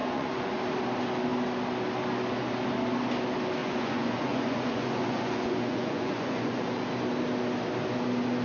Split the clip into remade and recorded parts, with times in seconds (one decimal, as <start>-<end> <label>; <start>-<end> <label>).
0.0-0.5 remade; 0.5-3.6 recorded; 3.6-6.6 remade; 6.6-8.4 recorded